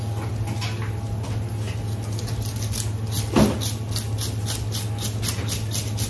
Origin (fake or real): real